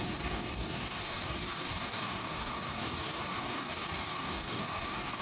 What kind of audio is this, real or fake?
fake